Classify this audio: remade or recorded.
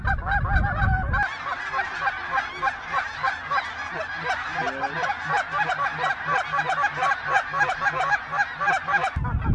recorded